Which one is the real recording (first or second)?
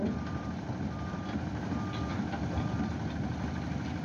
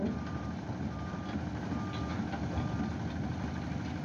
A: second